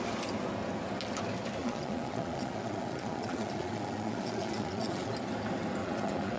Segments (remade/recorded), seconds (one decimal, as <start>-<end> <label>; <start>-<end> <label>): 0.0-1.6 recorded; 1.6-5.1 remade; 5.1-5.8 recorded; 5.8-6.4 remade